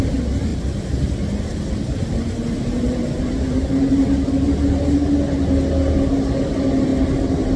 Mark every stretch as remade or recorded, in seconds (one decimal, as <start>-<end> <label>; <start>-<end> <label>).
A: 0.0-7.6 recorded